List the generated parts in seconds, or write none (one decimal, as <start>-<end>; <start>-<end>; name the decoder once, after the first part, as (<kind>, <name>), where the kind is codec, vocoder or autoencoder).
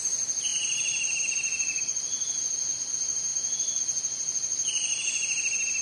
none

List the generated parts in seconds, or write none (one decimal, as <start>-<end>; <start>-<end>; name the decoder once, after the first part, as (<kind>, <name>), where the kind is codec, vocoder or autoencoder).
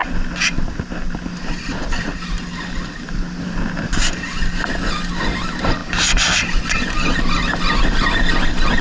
none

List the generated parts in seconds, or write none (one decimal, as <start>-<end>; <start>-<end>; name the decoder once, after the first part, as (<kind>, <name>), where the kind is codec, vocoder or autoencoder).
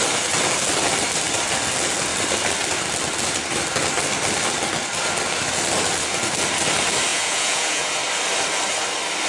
7.1-8.0 (vocoder, Vocos)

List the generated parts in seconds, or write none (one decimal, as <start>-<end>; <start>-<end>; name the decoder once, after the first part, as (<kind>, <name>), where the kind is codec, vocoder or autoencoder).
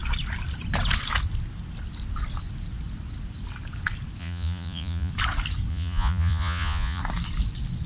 4.2-5.1 (vocoder, Vocos); 5.7-7.0